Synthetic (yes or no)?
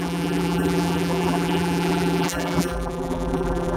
yes